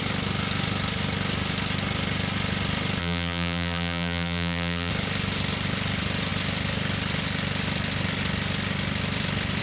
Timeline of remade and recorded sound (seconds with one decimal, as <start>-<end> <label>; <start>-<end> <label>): 0.0-3.0 recorded; 3.0-4.9 remade; 4.9-9.6 recorded